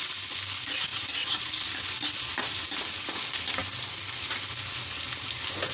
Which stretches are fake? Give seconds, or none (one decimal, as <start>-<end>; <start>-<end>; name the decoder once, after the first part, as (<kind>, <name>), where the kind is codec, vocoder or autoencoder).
0.9-2.5 (vocoder, BigVGAN v2); 3.6-4.3